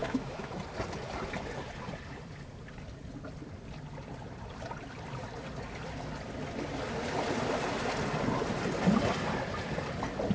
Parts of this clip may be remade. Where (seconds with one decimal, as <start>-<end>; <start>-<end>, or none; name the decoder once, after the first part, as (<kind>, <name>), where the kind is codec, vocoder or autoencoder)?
0.0-0.5 (autoencoder, DAC-VAE)